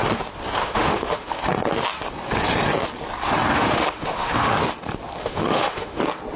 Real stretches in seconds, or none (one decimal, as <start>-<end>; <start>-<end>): 0.0-0.6; 1.4-3.5; 4.5-5.2; 6.0-6.4